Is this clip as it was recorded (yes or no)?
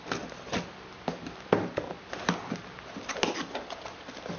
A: yes